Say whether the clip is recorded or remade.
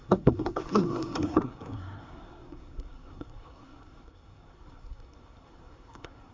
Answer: remade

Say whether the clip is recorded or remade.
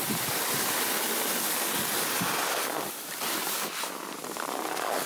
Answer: recorded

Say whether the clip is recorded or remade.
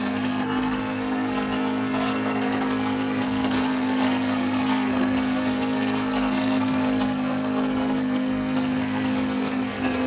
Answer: remade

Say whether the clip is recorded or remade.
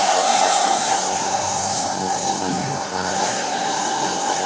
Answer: remade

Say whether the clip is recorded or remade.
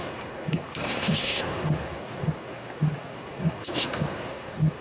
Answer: remade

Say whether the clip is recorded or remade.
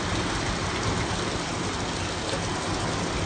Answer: recorded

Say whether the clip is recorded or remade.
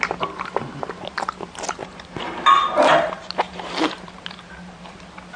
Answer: recorded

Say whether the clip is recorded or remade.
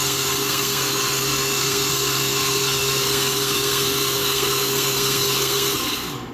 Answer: remade